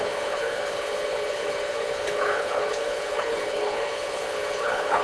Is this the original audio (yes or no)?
no